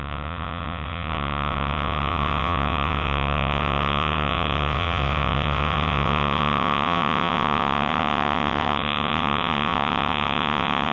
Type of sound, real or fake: fake